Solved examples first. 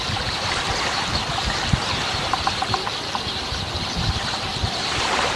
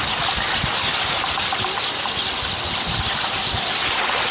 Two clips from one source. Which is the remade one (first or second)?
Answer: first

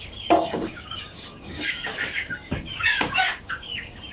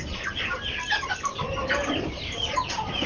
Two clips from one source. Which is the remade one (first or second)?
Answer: first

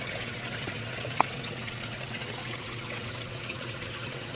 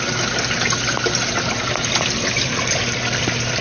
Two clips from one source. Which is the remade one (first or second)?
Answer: first